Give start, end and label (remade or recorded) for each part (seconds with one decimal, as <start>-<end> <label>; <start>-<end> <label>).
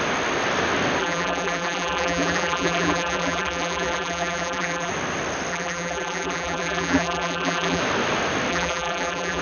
0.0-1.0 recorded; 1.0-4.9 remade; 4.9-5.5 recorded; 5.5-7.8 remade; 7.8-8.5 recorded; 8.5-9.4 remade